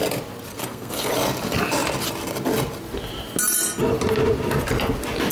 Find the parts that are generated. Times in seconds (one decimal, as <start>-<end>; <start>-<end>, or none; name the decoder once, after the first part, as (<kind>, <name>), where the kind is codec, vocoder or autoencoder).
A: 0.5-1.1 (codec, SNAC)